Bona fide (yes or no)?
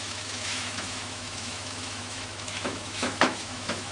no